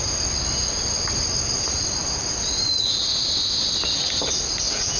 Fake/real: real